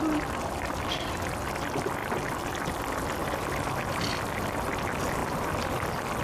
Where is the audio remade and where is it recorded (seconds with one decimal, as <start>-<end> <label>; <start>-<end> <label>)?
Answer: 0.0-6.2 recorded